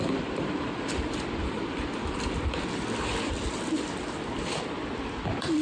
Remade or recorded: remade